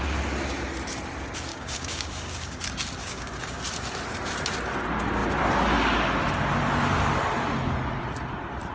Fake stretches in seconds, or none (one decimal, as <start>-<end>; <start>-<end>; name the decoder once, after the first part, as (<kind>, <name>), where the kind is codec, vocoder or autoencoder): 1.5-2.6 (codec, DAC); 3.0-3.6